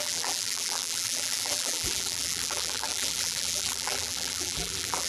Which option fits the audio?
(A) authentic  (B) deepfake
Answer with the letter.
B